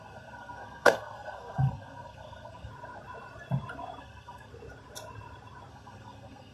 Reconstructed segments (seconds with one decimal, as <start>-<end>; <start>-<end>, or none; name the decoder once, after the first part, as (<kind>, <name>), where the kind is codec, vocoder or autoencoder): 0.0-2.7 (codec, SNAC); 4.0-4.5; 5.7-6.5